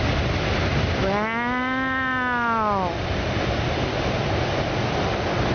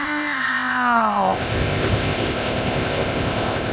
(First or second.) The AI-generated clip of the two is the second